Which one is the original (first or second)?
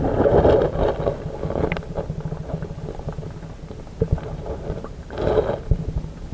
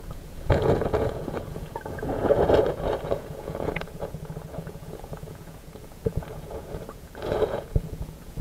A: first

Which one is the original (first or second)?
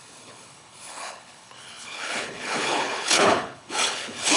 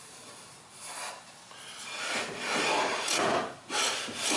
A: second